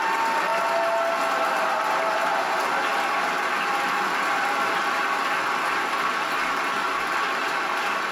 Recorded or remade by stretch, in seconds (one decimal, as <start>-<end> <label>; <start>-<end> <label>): 0.0-8.1 recorded